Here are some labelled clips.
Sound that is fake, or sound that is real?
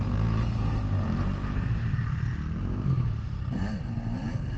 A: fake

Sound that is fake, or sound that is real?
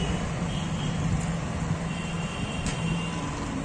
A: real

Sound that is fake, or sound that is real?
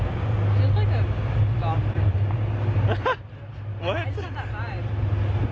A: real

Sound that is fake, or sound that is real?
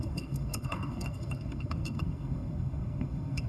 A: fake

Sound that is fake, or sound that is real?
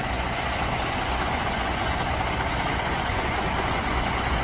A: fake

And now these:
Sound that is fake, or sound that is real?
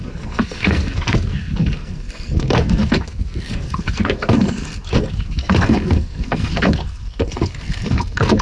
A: fake